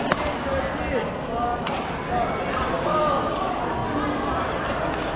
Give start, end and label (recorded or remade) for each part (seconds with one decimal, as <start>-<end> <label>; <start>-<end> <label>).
0.0-5.2 recorded